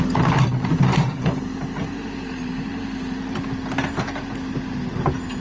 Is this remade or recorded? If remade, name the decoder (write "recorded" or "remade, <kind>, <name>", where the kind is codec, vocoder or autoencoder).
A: recorded